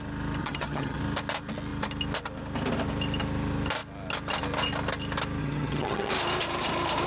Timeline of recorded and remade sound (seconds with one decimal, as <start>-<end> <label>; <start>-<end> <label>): 0.0-0.4 recorded; 0.4-1.0 remade; 1.0-5.4 recorded; 5.4-6.1 remade; 6.1-7.1 recorded